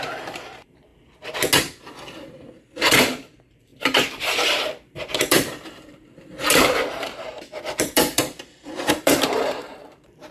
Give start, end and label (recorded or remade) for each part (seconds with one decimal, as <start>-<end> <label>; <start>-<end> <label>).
0.0-0.9 remade; 0.9-2.6 recorded; 2.6-10.3 remade